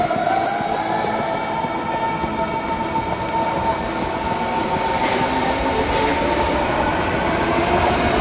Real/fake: real